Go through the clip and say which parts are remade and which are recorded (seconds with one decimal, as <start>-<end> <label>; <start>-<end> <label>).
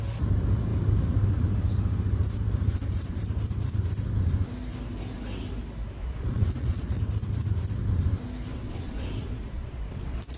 0.0-6.0 recorded; 6.0-7.0 remade; 7.0-8.5 recorded; 8.5-10.4 remade